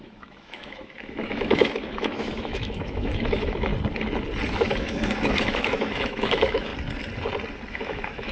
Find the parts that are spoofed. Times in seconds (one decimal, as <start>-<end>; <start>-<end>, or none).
0.0-3.7; 4.5-6.7; 7.7-8.3